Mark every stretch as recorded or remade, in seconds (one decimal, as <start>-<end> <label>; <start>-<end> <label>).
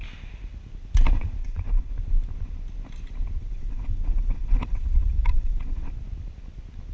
0.0-1.4 recorded; 1.4-1.9 remade; 1.9-3.4 recorded; 3.4-5.9 remade; 5.9-6.9 recorded